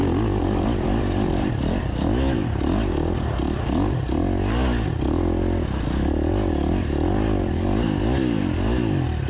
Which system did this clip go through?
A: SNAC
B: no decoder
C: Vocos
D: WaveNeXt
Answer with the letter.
B